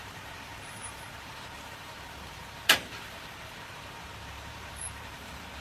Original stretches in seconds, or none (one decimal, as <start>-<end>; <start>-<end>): none